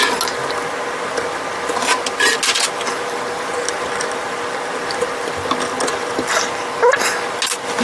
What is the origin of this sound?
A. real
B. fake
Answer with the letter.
A